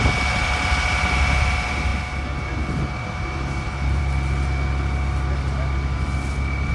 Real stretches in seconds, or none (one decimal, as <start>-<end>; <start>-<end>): 0.0-6.7